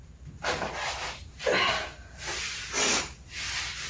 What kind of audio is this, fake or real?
real